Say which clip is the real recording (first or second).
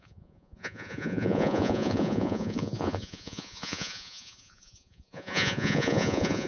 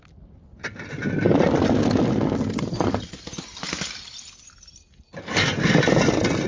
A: second